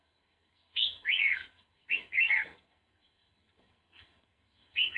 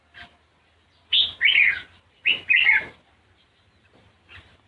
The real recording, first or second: second